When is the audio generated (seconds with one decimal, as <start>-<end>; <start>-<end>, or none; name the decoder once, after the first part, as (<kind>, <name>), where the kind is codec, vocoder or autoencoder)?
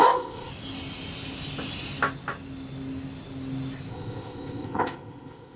0.0-0.5 (codec, ZipCodec); 3.9-5.6